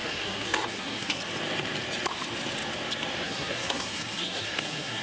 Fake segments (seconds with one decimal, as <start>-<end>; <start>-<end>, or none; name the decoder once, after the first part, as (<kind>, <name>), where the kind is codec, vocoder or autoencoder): 0.0-1.2 (codec, SNAC); 3.2-5.0